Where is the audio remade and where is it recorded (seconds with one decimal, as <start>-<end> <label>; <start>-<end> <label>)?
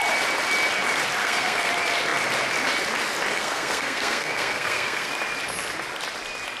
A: 0.0-1.2 recorded; 1.2-1.7 remade; 1.7-3.3 recorded; 3.3-5.1 remade; 5.1-6.6 recorded